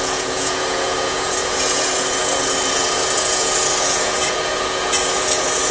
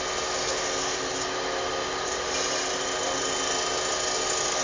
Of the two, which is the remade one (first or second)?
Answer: first